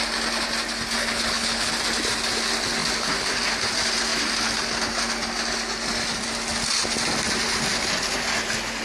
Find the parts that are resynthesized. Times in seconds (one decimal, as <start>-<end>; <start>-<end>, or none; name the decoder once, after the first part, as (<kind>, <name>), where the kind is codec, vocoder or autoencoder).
1.0-1.7 (codec, HILCodec)